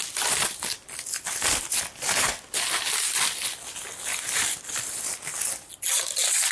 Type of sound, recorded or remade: recorded